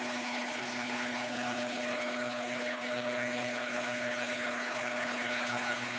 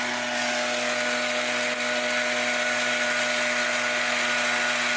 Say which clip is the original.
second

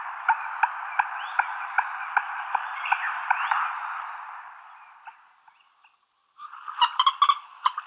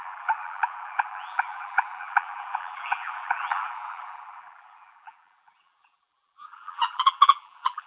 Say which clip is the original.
first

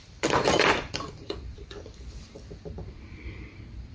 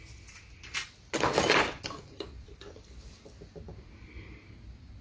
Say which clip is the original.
second